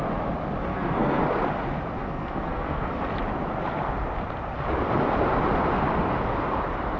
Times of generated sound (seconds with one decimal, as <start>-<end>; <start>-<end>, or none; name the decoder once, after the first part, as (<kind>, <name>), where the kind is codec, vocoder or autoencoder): 0.7-1.2 (codec, SNAC); 2.0-3.0